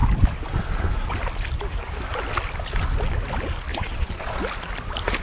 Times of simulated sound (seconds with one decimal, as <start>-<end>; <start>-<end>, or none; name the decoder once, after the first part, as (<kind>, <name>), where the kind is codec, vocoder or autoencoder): 3.7-4.4 (vocoder, Vocos)